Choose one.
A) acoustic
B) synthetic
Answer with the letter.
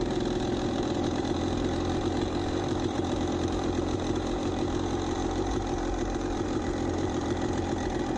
B